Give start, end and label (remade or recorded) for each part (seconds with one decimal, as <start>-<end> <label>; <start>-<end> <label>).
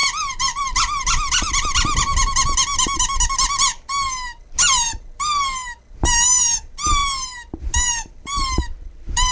0.0-9.3 recorded